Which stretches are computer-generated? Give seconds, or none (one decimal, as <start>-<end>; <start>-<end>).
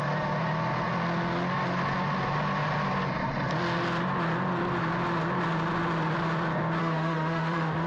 6.8-7.9